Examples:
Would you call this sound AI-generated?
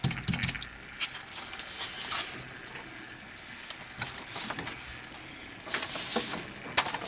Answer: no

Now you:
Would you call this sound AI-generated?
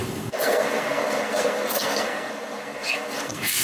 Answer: yes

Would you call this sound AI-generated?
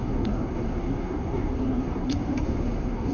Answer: yes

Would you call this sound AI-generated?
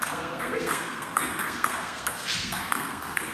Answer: yes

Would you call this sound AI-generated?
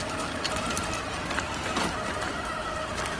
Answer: no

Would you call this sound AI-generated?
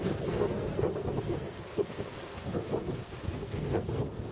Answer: yes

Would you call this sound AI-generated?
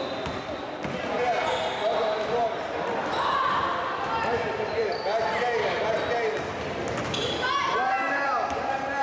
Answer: no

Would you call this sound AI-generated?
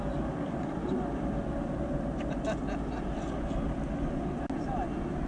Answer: no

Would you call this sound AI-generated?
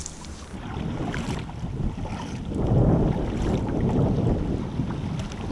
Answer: no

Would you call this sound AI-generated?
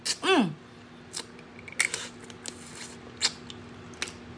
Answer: no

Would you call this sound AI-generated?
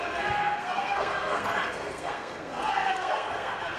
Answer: yes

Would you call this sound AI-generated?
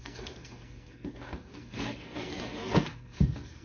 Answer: yes